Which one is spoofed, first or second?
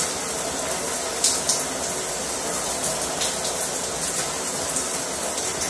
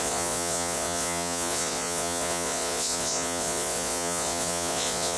second